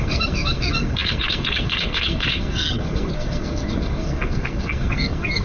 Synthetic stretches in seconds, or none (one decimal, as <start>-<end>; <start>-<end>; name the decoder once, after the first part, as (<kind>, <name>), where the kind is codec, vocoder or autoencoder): 0.0-5.4 (codec, SNAC)